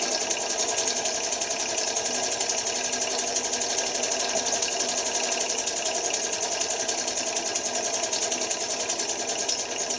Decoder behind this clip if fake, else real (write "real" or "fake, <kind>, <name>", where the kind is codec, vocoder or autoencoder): real